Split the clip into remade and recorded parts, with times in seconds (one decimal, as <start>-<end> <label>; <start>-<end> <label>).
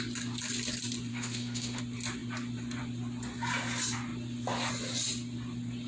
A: 0.0-1.1 recorded; 1.1-1.8 remade; 1.8-5.9 recorded